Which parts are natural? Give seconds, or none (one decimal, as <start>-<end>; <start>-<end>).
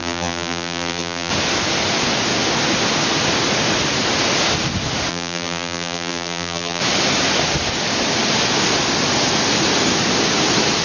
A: 1.3-5.1; 6.8-10.8